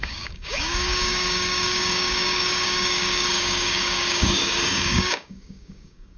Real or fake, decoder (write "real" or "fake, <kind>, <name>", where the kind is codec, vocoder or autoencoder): fake, codec, DAC